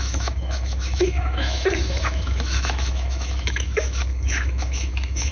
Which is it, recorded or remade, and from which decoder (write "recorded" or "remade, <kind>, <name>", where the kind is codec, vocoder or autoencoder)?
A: remade, autoencoder, DAC-VAE